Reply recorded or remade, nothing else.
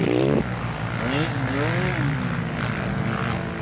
recorded